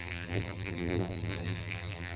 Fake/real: fake